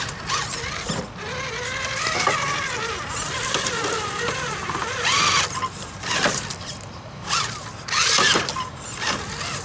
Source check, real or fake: real